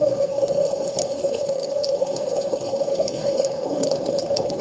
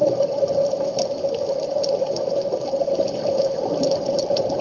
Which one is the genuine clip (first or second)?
second